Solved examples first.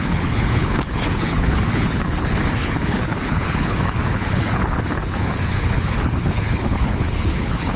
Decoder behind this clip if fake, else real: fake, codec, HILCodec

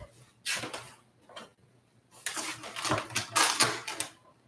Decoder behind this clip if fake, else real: real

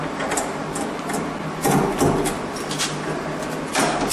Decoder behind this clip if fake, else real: real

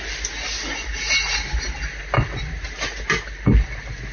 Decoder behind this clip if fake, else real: real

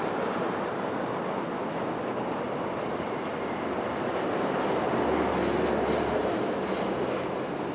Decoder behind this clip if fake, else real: real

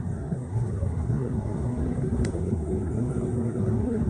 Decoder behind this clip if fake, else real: fake, codec, SNAC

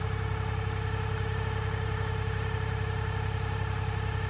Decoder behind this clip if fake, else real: real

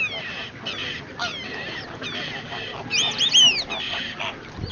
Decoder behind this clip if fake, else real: real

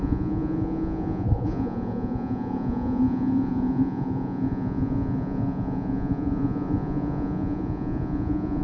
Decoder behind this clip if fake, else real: fake, vocoder, Vocos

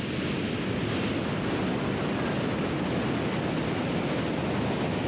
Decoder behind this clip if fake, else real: real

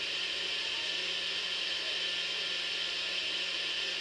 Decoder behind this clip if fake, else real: real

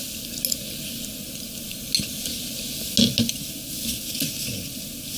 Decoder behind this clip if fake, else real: real